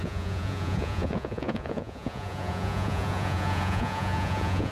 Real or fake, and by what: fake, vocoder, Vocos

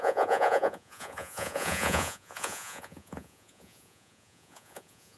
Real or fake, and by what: fake, vocoder, Vocos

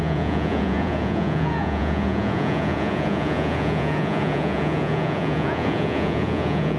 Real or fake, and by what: fake, vocoder, Vocos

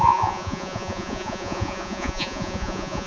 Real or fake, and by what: fake, vocoder, Vocos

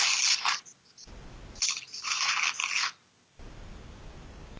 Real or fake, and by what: real